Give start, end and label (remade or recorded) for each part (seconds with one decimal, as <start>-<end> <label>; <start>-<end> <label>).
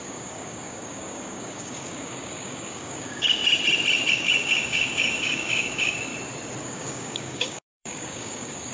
0.0-3.4 remade; 3.4-4.1 recorded; 4.1-6.1 remade; 6.1-6.6 recorded; 6.6-8.7 remade